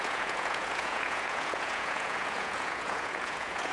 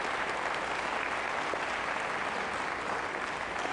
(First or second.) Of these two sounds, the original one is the second